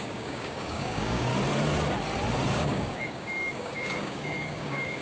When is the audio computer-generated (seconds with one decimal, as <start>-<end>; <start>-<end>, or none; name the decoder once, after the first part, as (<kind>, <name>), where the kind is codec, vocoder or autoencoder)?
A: 0.0-1.3 (codec, DAC); 2.5-5.0